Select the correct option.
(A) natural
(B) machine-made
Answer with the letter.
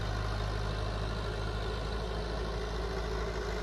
A